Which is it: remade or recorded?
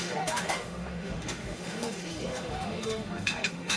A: remade